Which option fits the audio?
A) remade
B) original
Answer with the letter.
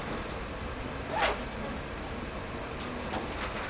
B